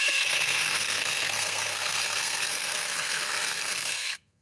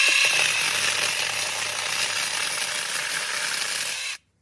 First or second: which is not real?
first